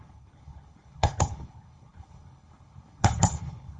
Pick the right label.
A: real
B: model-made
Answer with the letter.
B